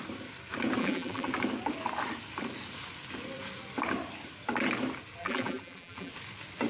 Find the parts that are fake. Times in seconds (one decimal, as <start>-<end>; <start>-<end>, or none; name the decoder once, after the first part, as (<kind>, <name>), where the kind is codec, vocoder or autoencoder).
0.8-1.3 (vocoder, BigVGAN v2); 5.2-6.1